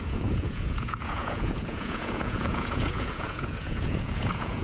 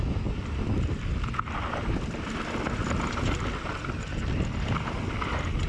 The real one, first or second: second